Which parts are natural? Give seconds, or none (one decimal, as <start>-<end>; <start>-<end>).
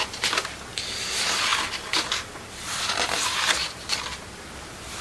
0.0-5.0